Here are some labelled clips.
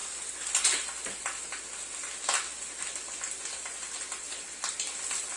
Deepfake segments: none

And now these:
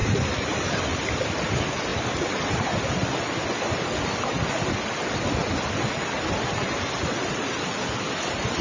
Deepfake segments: none

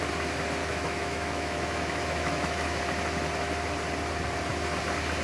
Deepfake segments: 0.6-2.8 (autoencoder, DAC-VAE)